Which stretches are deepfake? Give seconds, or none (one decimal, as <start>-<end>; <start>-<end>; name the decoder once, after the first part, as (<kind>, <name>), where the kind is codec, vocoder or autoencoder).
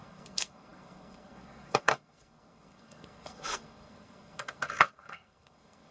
0.0-5.9 (codec, SNAC)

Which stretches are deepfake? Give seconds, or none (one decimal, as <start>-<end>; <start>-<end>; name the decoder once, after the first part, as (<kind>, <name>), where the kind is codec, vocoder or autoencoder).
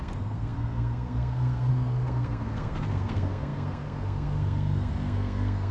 0.0-5.7 (codec, SNAC)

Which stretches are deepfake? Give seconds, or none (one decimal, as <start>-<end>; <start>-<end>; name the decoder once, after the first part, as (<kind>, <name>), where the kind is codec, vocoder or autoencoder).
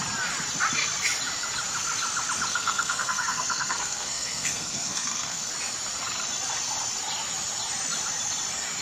2.5-5.5 (codec, SNAC)